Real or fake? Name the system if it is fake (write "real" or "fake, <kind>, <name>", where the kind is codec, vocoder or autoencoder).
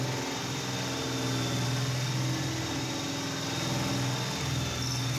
real